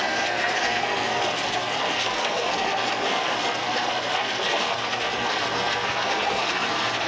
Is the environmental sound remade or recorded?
remade